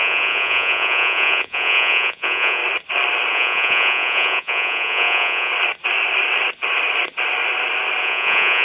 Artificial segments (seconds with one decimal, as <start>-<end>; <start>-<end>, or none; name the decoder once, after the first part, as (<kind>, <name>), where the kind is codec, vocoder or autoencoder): 0.0-2.6 (vocoder, Vocos); 3.3-5.5; 8.0-8.6